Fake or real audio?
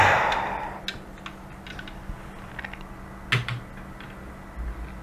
real